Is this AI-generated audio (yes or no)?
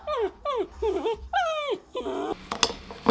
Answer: no